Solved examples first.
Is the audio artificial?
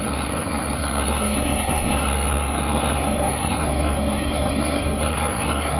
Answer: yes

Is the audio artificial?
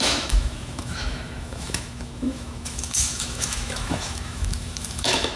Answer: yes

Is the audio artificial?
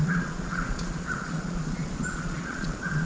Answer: yes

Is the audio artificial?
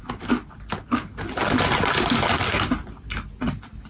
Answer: no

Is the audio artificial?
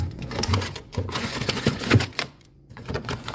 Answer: yes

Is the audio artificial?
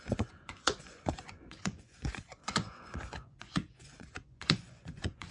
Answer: yes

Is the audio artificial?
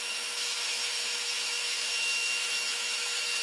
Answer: yes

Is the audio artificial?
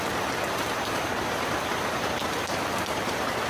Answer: yes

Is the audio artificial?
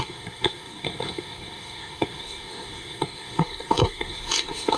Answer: yes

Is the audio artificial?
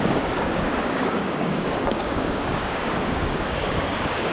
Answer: yes